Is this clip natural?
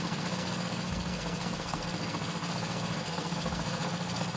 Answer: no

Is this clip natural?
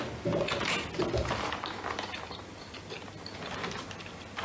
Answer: yes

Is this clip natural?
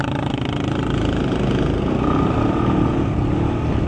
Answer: yes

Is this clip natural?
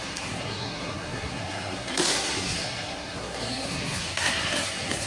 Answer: no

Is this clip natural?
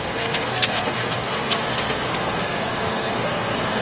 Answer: no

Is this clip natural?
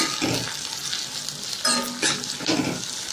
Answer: yes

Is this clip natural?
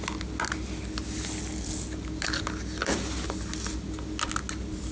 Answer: yes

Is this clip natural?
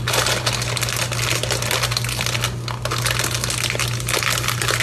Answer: yes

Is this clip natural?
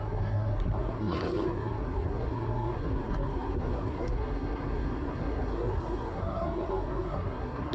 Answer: no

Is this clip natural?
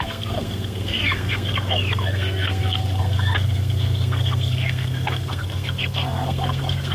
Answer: no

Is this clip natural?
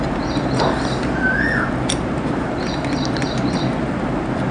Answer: yes